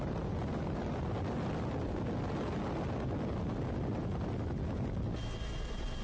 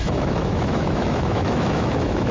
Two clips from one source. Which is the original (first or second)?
first